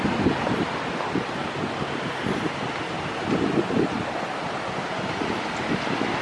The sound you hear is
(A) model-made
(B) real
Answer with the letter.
B